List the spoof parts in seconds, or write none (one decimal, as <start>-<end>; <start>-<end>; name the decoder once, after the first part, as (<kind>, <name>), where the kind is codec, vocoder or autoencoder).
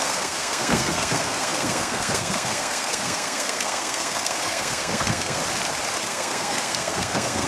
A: 0.0-5.4 (codec, SNAC); 6.0-7.5